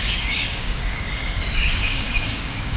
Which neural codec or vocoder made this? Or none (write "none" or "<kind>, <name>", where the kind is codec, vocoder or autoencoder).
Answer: codec, DAC